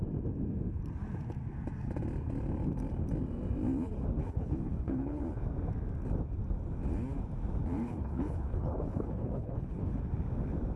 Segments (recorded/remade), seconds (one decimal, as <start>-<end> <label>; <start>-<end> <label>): 0.0-4.2 recorded; 4.2-5.2 remade; 5.2-7.8 recorded; 7.8-10.0 remade; 10.0-10.8 recorded